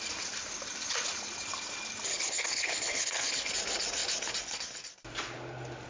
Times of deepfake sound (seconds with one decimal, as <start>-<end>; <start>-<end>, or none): 2.1-3.5